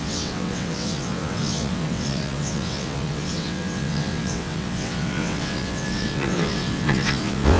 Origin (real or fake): fake